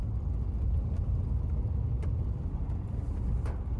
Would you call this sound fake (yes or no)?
no